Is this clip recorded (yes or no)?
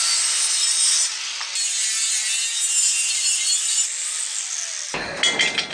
yes